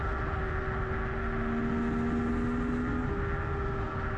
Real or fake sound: real